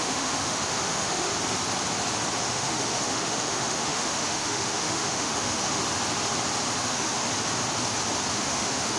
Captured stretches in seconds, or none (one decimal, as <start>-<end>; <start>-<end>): 1.3-2.4; 5.8-6.8; 7.2-8.3